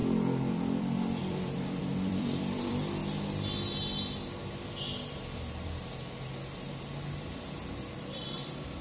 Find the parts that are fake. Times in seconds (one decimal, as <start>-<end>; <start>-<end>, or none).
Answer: 0.5-3.0; 8.1-8.8